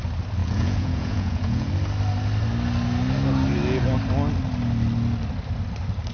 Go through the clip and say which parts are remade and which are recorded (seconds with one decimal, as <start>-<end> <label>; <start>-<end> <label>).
0.0-0.4 recorded; 0.4-1.7 remade; 1.7-6.1 recorded